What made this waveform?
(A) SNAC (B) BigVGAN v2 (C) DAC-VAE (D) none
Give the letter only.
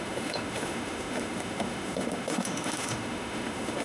C